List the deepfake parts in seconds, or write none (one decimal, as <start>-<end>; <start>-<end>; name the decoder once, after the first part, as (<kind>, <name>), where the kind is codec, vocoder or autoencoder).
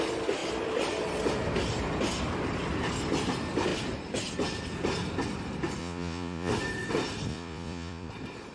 5.8-6.5 (vocoder, Vocos); 7.3-8.1